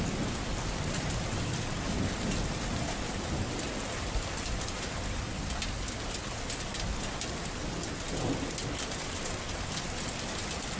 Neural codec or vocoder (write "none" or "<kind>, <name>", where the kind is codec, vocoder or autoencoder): none